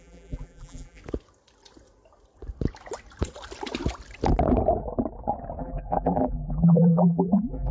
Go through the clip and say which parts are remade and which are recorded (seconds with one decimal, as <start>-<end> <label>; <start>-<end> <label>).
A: 0.0-1.0 remade; 1.0-5.6 recorded; 5.6-7.7 remade